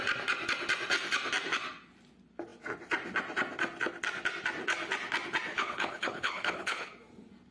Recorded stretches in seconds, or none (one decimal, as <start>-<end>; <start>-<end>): 0.0-5.5; 6.9-7.5